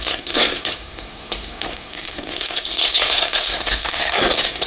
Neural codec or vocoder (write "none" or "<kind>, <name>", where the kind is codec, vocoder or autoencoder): codec, SNAC